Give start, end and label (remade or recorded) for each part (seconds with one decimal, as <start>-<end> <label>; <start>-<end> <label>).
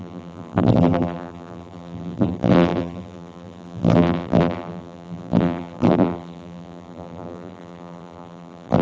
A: 0.0-8.8 remade